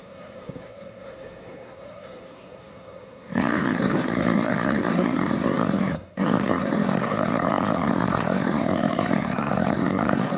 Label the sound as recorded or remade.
remade